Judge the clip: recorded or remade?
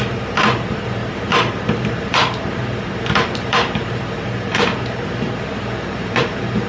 remade